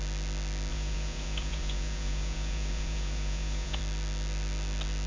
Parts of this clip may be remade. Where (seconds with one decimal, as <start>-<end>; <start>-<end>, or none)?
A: 0.7-3.8